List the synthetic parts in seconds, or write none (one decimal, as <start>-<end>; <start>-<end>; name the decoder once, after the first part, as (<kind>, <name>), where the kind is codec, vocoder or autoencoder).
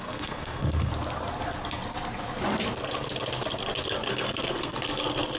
0.0-0.9 (codec, SNAC); 4.1-4.8